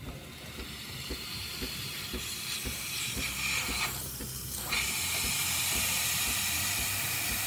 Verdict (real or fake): fake